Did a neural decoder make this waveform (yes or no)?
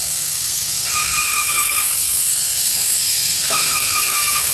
yes